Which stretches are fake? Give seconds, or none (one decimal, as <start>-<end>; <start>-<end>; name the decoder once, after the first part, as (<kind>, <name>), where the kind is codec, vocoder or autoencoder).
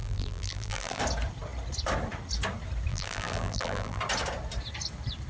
0.0-1.0 (vocoder, BigVGAN v2); 2.9-4.0